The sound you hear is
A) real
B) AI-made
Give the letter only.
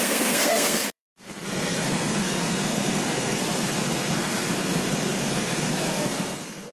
B